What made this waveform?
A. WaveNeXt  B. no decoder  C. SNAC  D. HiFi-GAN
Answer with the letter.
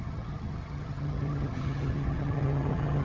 D